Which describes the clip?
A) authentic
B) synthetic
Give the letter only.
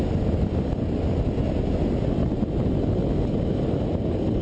A